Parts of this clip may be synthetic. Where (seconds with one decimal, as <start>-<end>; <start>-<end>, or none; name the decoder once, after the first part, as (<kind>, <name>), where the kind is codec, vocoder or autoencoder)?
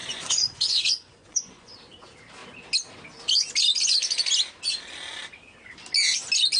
0.0-1.7 (vocoder, Vocos)